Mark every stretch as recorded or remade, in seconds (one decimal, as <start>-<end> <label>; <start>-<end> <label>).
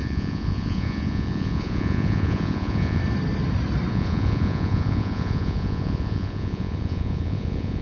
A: 0.0-3.0 remade; 3.0-3.9 recorded; 3.9-7.8 remade